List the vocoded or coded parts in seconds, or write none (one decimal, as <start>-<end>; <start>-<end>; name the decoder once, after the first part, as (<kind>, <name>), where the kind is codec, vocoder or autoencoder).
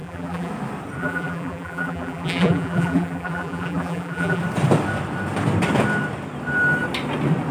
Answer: 0.0-0.5 (vocoder, BigVGAN v2); 1.0-4.4